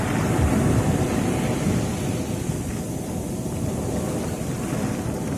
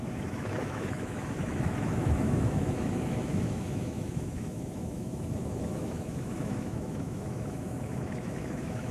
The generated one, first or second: second